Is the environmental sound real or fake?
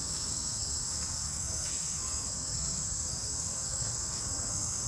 fake